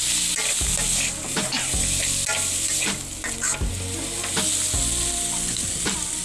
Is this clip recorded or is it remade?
recorded